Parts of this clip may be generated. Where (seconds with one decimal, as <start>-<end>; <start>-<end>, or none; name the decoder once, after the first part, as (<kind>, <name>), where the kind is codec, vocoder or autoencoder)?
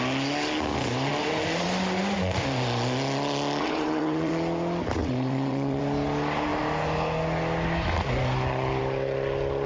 3.6-4.3 (vocoder, WaveNeXt); 5.0-5.8